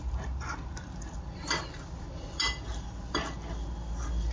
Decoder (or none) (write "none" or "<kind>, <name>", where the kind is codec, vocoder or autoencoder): none